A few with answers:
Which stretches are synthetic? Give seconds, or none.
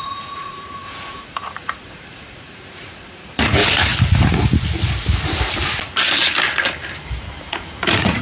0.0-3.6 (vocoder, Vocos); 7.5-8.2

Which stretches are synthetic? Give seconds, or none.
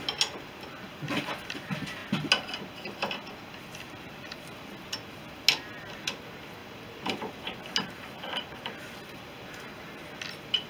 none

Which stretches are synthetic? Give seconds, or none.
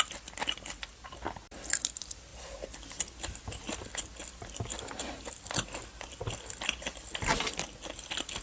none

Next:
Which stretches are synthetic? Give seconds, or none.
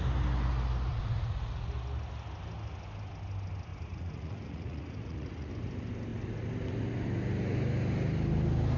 0.9-1.7 (vocoder, Vocos); 3.7-5.5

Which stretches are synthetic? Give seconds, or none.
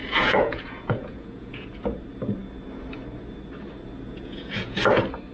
0.0-1.7 (vocoder, Vocos); 4.1-4.8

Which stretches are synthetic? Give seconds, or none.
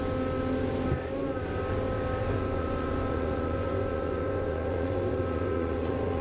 2.2-6.2 (vocoder, Vocos)